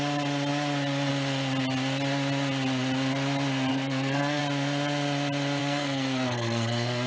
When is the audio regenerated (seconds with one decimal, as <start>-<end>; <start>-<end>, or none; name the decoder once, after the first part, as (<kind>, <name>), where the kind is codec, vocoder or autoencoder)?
3.7-4.4 (codec, SNAC); 5.6-7.1